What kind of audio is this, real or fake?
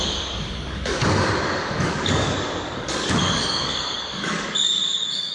fake